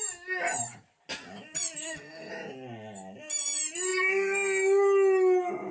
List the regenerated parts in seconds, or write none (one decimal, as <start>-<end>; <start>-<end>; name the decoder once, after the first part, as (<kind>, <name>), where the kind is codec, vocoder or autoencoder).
1.8-2.3 (codec, SNAC)